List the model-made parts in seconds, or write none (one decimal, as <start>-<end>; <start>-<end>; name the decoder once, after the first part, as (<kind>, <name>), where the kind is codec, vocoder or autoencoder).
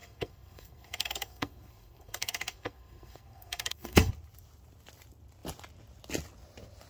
0.0-4.1 (codec, SNAC)